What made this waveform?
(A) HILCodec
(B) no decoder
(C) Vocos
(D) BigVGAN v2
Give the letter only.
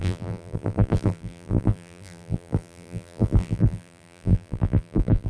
D